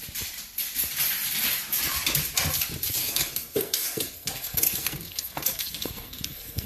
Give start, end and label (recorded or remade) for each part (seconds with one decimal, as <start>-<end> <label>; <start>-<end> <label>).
0.0-3.0 recorded; 3.0-6.7 remade